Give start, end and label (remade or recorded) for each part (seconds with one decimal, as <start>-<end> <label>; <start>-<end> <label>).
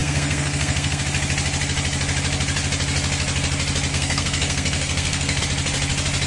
0.0-1.0 remade; 1.0-3.9 recorded; 3.9-5.4 remade; 5.4-6.3 recorded